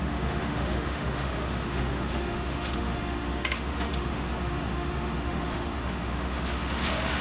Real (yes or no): no